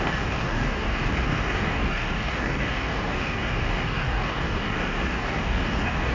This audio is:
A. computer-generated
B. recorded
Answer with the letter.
A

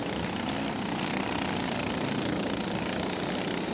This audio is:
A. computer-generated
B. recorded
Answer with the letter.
B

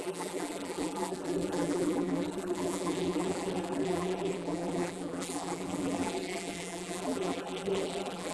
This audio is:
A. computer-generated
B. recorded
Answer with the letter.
A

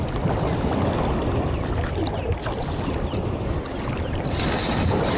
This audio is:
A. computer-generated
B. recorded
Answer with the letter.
B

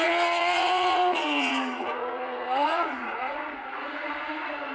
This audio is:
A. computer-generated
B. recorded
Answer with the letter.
A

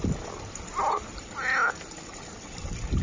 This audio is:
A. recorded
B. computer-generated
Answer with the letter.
A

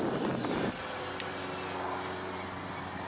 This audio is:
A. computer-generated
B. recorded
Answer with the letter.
B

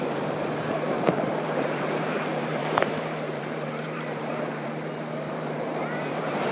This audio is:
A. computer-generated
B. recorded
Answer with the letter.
A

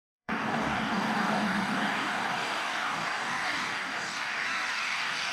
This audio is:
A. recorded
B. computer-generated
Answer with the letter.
B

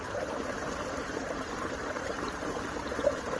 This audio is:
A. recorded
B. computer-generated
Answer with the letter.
B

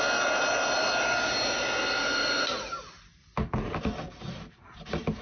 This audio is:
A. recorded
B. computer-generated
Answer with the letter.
A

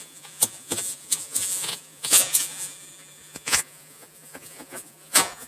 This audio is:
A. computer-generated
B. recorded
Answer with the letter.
A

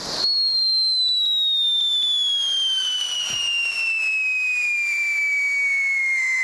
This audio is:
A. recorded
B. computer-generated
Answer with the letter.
A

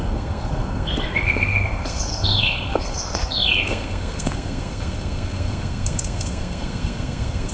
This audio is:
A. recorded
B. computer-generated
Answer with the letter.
B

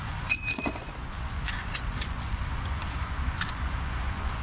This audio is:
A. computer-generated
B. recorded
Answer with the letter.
A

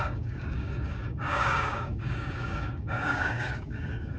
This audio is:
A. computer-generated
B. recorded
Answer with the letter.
A